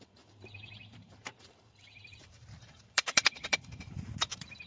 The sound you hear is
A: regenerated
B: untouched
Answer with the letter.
A